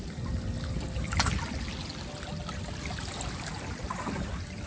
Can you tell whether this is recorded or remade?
recorded